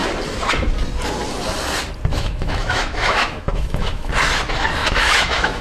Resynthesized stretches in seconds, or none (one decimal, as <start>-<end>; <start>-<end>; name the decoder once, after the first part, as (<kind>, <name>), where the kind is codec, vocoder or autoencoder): 2.1-4.1 (autoencoder, DAC-VAE); 4.8-5.6